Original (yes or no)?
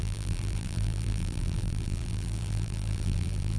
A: no